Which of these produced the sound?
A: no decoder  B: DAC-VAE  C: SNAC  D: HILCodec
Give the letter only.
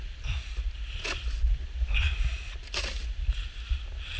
A